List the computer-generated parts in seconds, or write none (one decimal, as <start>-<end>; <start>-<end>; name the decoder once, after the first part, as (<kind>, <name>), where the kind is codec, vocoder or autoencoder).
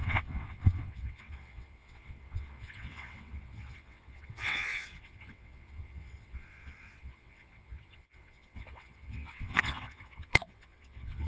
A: 0.0-11.3 (vocoder, WaveNeXt)